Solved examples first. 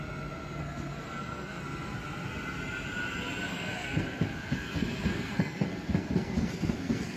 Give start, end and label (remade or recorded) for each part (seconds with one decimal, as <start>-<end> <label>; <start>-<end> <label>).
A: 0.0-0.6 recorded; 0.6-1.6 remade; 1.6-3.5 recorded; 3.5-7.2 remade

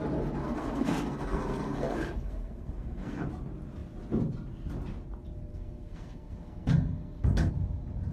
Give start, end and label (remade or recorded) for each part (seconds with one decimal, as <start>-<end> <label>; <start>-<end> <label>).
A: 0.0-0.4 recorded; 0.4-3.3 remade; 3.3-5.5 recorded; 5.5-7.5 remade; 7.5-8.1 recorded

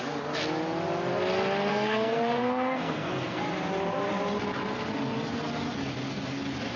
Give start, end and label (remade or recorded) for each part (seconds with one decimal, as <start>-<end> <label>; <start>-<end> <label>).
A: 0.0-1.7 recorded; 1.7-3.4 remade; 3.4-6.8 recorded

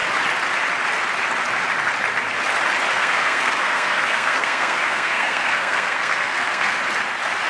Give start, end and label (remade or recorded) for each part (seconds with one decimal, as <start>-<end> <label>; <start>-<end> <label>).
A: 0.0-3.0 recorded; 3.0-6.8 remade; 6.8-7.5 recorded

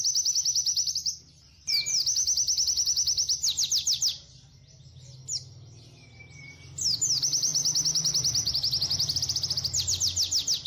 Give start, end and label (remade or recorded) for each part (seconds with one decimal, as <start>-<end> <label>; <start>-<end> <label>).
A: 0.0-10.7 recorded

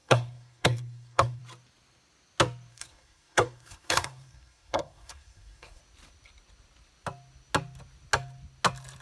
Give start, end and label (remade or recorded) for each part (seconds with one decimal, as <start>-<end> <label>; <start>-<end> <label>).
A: 0.0-1.4 remade; 1.4-2.7 recorded; 2.7-5.8 remade; 5.8-9.0 recorded

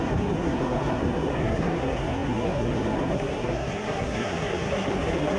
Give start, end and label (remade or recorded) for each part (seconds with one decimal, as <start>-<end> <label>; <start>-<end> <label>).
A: 0.0-5.4 remade